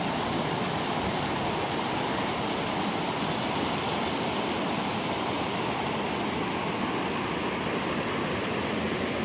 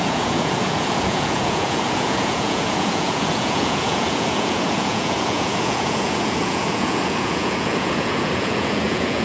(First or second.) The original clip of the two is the first